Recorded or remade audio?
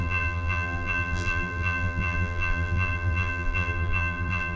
remade